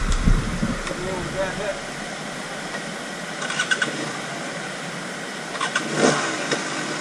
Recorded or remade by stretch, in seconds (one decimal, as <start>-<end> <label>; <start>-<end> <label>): 0.0-7.0 recorded